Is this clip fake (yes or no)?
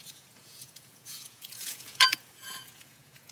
yes